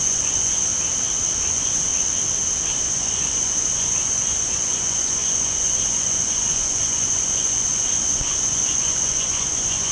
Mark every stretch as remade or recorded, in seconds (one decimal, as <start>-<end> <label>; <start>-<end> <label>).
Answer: 0.0-0.7 remade; 0.7-1.5 recorded; 1.5-1.9 remade; 1.9-2.7 recorded; 2.7-9.9 remade